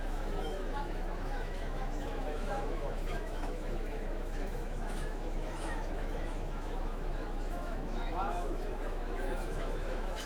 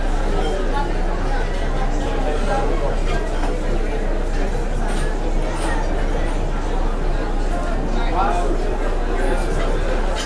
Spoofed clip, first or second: first